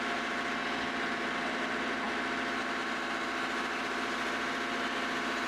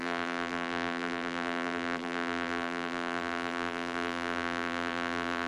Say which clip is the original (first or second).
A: first